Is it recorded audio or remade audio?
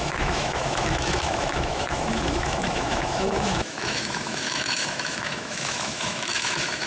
remade